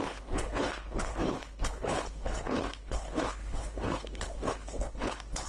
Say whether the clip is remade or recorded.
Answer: remade